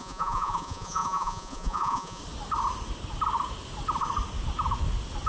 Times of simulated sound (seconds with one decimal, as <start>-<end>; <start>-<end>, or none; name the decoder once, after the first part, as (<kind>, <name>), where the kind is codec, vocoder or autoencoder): 0.0-2.2 (vocoder, Vocos)

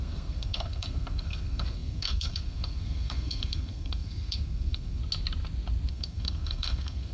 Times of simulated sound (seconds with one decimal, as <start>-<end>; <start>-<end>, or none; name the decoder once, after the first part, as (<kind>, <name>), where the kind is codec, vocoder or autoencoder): 0.0-5.0 (codec, SNAC); 5.9-7.1

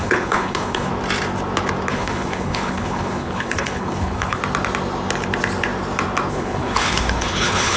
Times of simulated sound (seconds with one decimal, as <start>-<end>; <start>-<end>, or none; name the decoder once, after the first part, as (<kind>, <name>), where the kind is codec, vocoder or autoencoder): 0.0-0.9 (codec, HILCodec); 1.9-4.4; 6.3-7.8

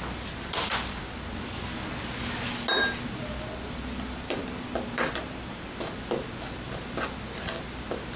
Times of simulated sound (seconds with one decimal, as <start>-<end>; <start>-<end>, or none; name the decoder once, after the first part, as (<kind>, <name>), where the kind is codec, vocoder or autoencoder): 4.4-5.8 (vocoder, BigVGAN v2)

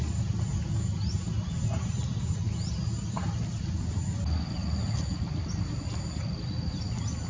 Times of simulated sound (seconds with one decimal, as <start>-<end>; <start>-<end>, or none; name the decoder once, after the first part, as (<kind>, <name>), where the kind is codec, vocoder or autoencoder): none

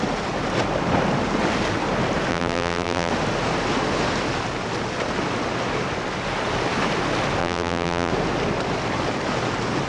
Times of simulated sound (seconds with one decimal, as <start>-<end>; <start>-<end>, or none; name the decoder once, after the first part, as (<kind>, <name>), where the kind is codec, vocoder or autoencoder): 2.3-3.1 (vocoder, BigVGAN v2); 7.4-8.1

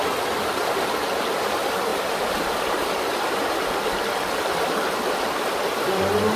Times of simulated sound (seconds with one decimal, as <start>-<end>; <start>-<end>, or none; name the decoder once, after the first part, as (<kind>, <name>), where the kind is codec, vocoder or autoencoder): none